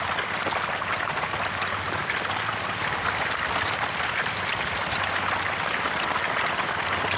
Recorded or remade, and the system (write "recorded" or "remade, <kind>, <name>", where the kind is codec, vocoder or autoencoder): recorded